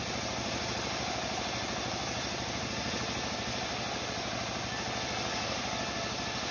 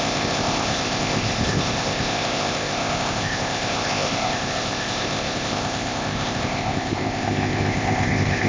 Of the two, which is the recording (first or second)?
first